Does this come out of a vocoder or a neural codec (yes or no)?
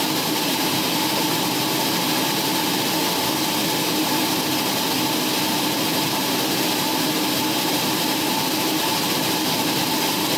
no